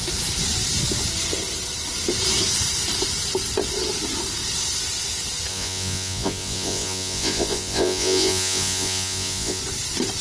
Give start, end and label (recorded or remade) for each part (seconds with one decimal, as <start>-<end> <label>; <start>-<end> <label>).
0.0-5.5 recorded; 5.5-9.6 remade; 9.6-10.2 recorded